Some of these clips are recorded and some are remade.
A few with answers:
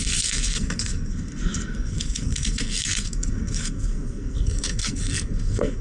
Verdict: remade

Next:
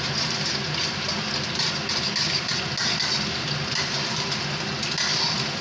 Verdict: recorded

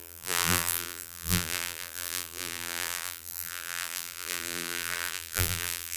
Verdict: remade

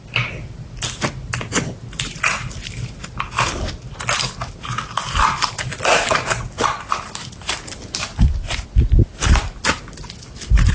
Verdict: recorded